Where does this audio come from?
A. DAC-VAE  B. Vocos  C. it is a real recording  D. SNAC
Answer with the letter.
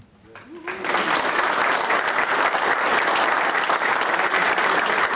C